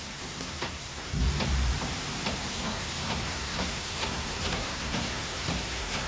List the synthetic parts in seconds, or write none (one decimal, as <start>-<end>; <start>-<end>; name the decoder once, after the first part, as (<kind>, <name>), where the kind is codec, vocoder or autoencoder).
0.0-1.2 (codec, SNAC); 2.4-6.1